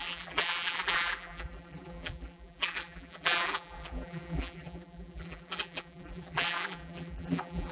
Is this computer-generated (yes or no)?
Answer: yes